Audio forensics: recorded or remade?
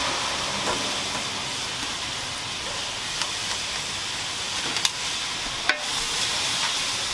recorded